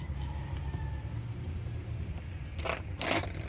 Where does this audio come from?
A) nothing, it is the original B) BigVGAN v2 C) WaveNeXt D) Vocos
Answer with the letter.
A